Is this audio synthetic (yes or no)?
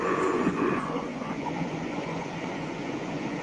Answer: yes